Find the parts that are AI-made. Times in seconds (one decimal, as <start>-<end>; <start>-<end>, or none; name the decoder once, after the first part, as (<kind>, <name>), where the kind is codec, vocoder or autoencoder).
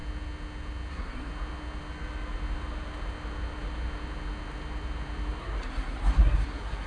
0.9-1.3 (codec, SNAC); 5.4-6.9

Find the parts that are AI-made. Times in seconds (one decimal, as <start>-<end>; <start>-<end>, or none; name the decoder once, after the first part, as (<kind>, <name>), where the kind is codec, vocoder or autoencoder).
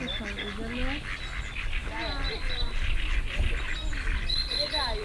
none